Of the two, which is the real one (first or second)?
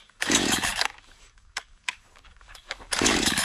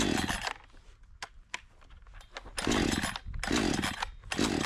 second